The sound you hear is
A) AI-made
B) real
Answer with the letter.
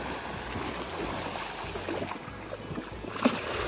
B